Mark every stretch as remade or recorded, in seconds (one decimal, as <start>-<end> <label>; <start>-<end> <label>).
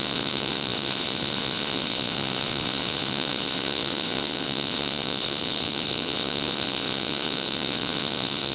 0.0-8.5 remade